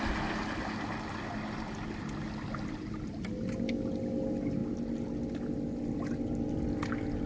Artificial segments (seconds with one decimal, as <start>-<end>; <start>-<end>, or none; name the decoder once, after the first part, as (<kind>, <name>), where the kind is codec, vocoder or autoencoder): none